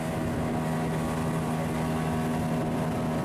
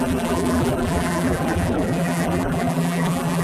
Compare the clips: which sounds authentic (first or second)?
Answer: first